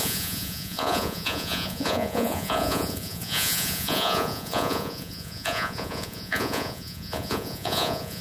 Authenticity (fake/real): fake